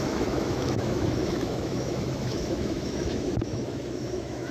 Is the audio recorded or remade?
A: remade